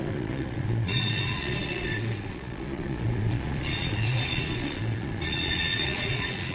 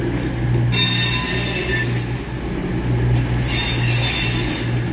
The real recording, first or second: second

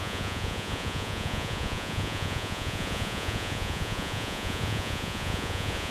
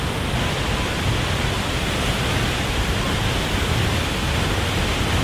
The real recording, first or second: second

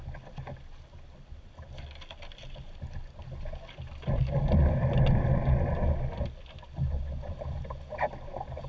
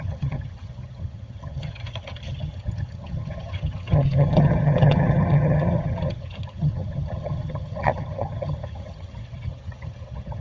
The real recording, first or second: first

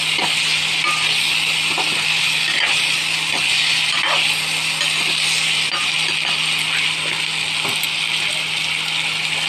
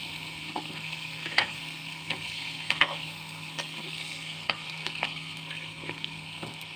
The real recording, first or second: first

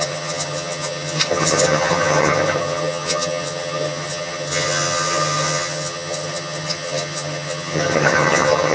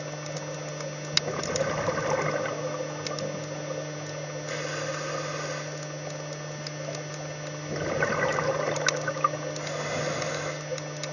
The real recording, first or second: second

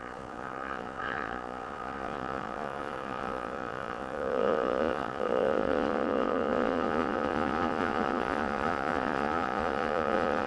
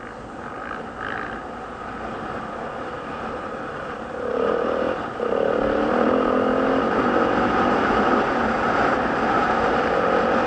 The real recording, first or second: second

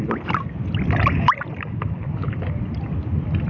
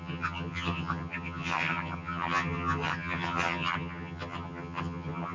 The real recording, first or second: first